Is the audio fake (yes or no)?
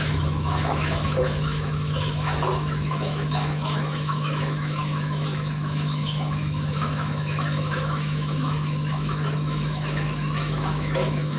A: yes